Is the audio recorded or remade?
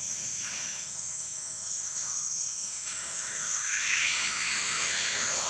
remade